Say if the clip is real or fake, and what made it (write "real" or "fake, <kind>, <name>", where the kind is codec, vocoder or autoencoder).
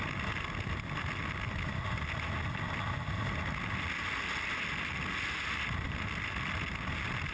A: real